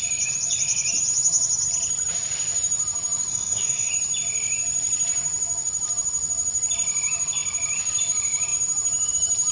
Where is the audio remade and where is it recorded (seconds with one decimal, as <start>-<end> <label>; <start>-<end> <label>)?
0.0-3.3 recorded; 3.3-3.9 remade; 3.9-9.5 recorded